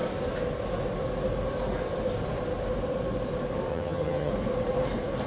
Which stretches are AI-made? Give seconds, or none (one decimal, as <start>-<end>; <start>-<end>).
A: 3.7-4.3